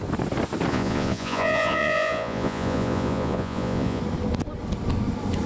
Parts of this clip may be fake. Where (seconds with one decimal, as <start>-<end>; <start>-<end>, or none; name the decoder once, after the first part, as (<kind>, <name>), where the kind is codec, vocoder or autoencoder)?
0.7-4.0 (vocoder, Vocos)